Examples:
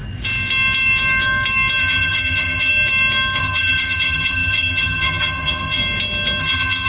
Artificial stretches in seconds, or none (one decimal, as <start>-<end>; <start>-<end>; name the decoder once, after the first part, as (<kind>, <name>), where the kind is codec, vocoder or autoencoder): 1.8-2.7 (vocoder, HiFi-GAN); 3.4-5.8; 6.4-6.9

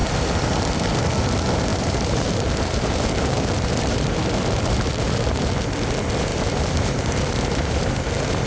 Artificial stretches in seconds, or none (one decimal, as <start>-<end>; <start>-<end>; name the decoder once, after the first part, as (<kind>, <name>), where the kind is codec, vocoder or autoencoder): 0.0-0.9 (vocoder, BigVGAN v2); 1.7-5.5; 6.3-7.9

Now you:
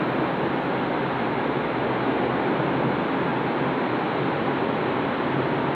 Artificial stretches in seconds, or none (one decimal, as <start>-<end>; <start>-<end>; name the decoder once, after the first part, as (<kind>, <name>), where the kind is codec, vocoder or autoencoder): none

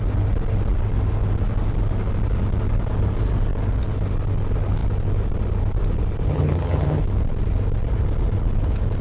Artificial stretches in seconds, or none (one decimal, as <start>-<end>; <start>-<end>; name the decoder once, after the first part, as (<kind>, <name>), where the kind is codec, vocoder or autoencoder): 6.3-7.0 (vocoder, HiFi-GAN)

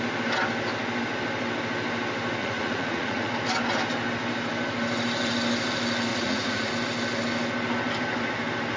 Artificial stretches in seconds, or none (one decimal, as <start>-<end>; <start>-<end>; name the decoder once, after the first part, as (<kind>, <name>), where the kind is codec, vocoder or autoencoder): 2.4-3.3 (vocoder, Vocos); 6.1-6.7

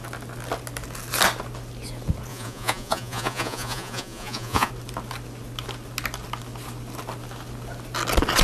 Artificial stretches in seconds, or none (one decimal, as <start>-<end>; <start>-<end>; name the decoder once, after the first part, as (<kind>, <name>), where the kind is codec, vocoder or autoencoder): 2.3-4.7 (vocoder, Vocos)